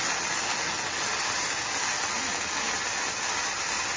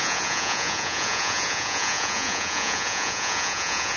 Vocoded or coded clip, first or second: second